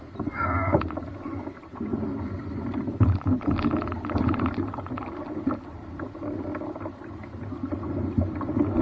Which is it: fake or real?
real